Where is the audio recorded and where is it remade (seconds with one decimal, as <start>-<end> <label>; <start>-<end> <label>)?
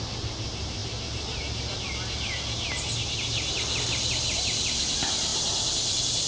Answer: 0.0-6.3 recorded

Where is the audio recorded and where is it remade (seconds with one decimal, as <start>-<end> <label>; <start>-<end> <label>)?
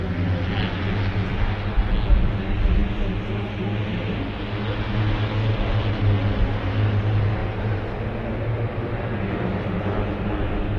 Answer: 0.0-10.8 recorded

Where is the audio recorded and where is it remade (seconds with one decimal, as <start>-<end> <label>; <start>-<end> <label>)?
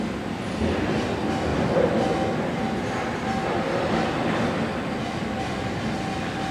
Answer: 0.0-6.5 recorded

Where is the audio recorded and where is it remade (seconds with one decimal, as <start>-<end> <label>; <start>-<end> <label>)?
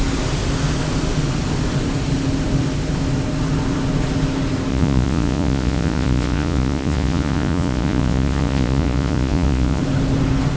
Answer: 0.0-4.7 recorded; 4.7-9.8 remade; 9.8-10.6 recorded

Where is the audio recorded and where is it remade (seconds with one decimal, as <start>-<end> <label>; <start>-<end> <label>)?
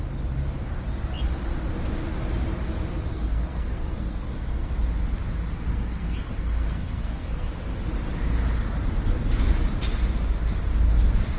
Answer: 0.0-3.1 recorded; 3.1-4.7 remade; 4.7-5.7 recorded; 5.7-7.5 remade; 7.5-11.4 recorded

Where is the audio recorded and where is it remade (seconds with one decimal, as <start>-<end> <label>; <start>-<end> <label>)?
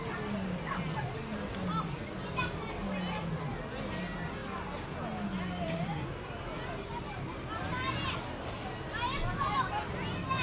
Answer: 0.0-10.4 recorded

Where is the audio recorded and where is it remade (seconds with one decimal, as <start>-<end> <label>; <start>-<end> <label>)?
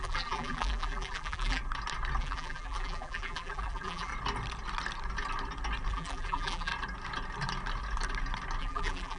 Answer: 0.0-1.6 remade; 1.6-2.2 recorded; 2.2-4.1 remade; 4.1-5.9 recorded; 5.9-6.7 remade; 6.7-8.6 recorded; 8.6-9.2 remade